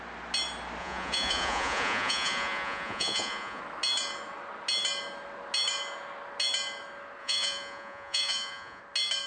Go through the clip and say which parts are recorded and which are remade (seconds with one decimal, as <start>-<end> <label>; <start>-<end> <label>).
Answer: 0.0-0.8 recorded; 0.8-3.6 remade; 3.6-7.2 recorded; 7.2-8.8 remade; 8.8-9.3 recorded